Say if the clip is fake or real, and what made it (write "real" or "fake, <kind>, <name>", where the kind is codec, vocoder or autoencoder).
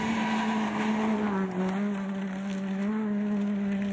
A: real